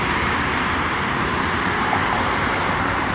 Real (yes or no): no